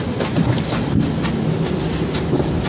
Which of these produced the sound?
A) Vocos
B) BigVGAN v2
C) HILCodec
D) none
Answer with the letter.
D